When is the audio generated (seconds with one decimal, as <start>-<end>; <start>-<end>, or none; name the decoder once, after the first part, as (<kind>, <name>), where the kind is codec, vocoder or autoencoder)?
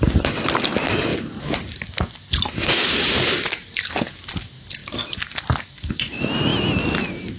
none